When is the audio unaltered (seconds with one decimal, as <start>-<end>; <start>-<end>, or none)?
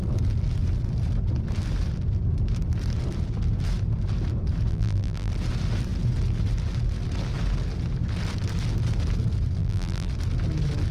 0.0-4.7; 5.3-9.6; 10.1-10.9